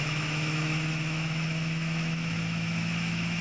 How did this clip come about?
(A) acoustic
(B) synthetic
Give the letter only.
B